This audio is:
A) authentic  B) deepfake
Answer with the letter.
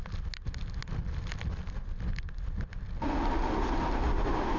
A